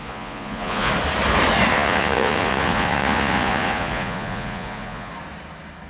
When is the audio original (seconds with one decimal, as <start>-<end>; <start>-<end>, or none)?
0.9-1.7; 5.1-5.9